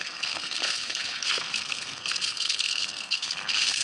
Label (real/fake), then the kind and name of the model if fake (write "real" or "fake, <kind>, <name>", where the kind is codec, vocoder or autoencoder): fake, codec, SNAC